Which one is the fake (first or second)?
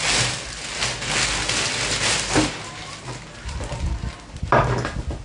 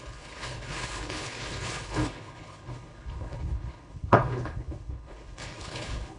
second